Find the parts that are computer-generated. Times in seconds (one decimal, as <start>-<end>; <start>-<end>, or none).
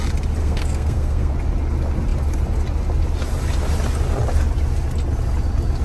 0.4-1.3